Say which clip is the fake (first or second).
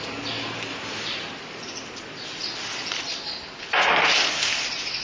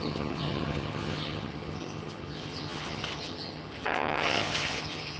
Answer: second